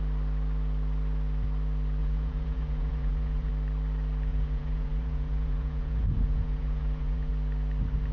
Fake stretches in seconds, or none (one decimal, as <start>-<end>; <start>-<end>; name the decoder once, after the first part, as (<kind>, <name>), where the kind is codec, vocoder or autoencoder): 2.0-3.5 (vocoder, Vocos); 4.3-7.3